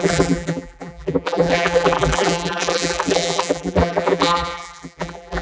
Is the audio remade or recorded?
remade